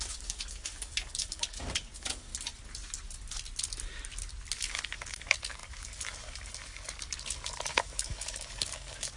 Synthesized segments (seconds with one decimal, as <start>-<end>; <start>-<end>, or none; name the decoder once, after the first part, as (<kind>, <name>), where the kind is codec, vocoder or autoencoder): 0.0-2.3 (codec, DAC); 4.7-9.2